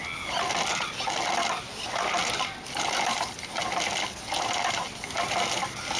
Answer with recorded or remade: recorded